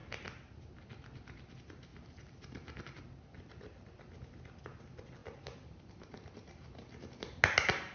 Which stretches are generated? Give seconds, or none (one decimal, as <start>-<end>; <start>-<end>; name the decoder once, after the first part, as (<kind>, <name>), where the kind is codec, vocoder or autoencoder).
1.9-3.0 (vocoder, BigVGAN v2); 5.2-5.9